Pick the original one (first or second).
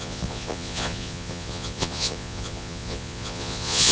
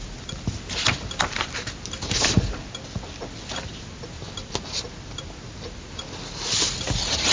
second